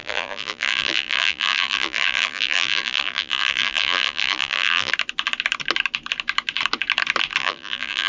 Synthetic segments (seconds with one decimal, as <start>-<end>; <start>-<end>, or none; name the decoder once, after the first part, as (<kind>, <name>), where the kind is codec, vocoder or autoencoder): 0.0-4.9 (vocoder, BigVGAN v2); 7.4-8.1